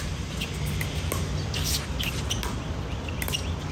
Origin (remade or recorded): recorded